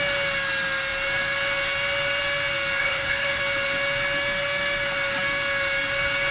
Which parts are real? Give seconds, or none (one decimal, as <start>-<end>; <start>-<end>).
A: 0.0-2.8; 3.4-6.3